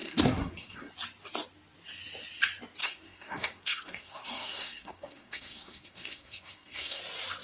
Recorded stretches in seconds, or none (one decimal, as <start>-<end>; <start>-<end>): 0.9-2.8; 7.0-7.4